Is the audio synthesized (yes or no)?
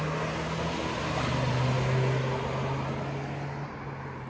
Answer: no